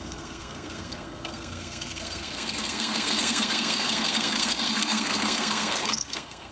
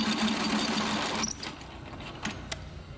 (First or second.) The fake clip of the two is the first